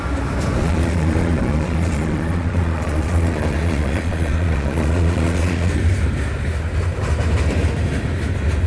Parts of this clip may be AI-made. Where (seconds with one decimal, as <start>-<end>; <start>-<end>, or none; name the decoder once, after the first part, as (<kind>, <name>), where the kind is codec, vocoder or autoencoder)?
0.6-5.7 (vocoder, Vocos)